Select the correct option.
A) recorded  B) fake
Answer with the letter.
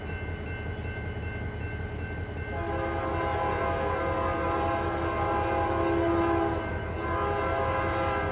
A